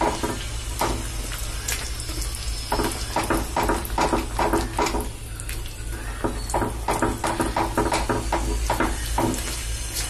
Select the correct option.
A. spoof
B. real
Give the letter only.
B